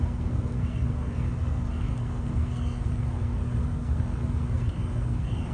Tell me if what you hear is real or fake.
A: fake